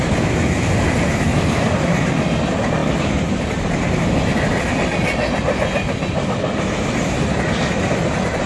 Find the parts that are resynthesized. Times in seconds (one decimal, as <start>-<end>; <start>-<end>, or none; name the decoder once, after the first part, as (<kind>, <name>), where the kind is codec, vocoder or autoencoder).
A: 1.3-2.1 (vocoder, BigVGAN v2)